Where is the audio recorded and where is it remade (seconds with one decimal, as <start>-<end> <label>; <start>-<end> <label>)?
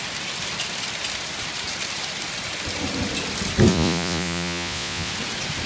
0.0-3.7 recorded; 3.7-5.1 remade; 5.1-5.7 recorded